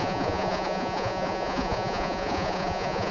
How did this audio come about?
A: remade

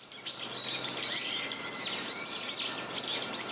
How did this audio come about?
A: recorded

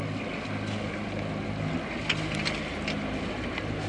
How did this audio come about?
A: recorded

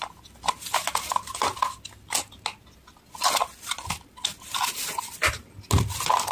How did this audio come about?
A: recorded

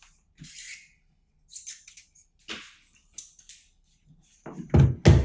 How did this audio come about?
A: recorded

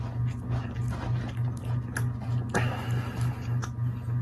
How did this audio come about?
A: recorded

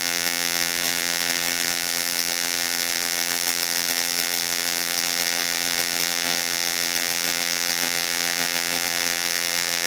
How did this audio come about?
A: remade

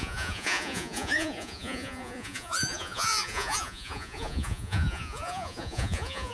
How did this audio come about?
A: remade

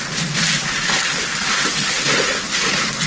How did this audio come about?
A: recorded